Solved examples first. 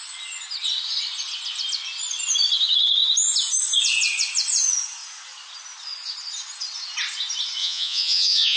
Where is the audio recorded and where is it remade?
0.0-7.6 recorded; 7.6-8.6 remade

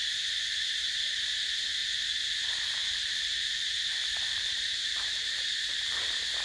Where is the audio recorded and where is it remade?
0.0-1.8 recorded; 1.8-5.6 remade; 5.6-6.4 recorded

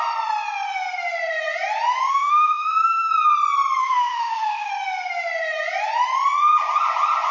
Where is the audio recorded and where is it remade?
0.0-2.1 recorded; 2.1-3.1 remade; 3.1-3.8 recorded; 3.8-4.7 remade; 4.7-7.3 recorded